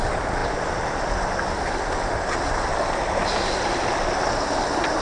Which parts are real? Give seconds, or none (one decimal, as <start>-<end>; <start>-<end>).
0.0-5.0